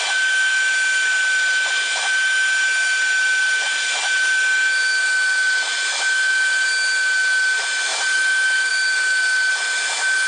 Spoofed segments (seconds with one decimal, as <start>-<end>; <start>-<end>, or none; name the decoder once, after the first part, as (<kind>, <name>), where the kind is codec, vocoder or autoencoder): none